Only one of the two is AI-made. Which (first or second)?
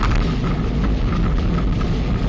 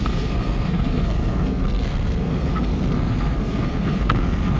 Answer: second